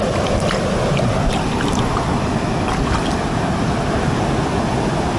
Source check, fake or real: real